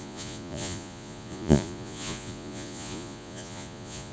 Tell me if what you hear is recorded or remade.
remade